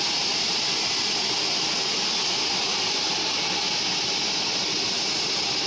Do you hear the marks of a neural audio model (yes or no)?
no